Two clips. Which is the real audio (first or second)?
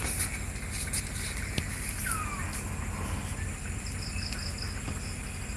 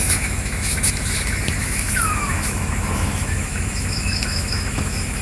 first